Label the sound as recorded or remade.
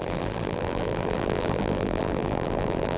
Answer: remade